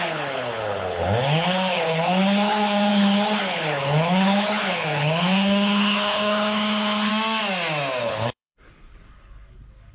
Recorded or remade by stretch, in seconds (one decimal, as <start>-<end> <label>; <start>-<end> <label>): 0.0-7.1 remade; 7.1-8.0 recorded; 8.0-9.9 remade